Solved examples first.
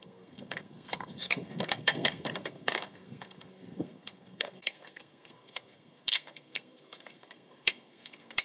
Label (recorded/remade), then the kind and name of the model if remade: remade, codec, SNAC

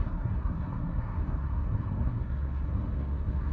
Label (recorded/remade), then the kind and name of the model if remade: remade, codec, SNAC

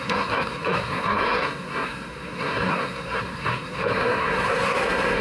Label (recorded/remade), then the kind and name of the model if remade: remade, codec, SNAC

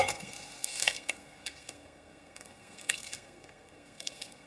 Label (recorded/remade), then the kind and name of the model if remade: remade, codec, SNAC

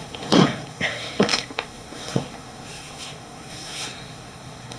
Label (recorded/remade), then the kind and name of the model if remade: remade, codec, SNAC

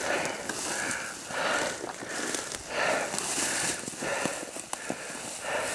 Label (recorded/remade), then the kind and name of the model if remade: recorded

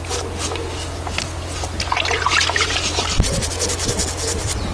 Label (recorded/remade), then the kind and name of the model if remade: recorded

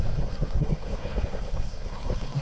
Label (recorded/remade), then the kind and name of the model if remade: remade, codec, SNAC